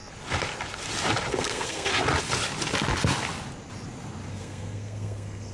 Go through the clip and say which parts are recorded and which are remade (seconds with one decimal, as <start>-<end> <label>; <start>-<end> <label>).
0.0-1.3 recorded; 1.3-1.9 remade; 1.9-4.3 recorded; 4.3-5.5 remade

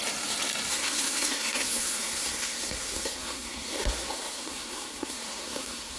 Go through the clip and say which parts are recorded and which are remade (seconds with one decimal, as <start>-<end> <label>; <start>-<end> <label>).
0.0-0.7 recorded; 0.7-6.0 remade

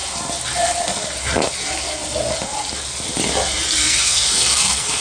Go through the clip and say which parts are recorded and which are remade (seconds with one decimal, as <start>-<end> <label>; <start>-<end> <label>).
0.0-3.8 recorded; 3.8-5.0 remade